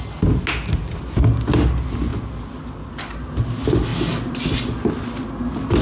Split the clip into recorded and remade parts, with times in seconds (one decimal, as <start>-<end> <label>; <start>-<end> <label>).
0.0-5.8 recorded